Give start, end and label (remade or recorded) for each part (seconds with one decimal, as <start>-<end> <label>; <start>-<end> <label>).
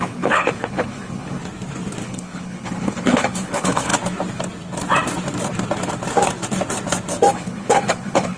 0.0-1.4 remade; 1.4-2.0 recorded; 2.0-3.9 remade; 3.9-7.3 recorded; 7.3-8.4 remade